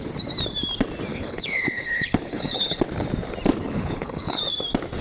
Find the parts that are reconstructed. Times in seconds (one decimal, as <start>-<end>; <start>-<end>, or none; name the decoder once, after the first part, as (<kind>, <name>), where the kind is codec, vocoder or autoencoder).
1.1-2.8 (codec, HILCodec); 3.6-4.4

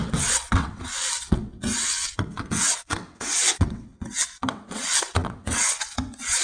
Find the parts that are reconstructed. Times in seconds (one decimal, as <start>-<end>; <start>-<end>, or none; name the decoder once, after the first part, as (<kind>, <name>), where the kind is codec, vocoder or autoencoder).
0.0-6.4 (vocoder, WaveNeXt)